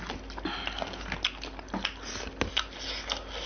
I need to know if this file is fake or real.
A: real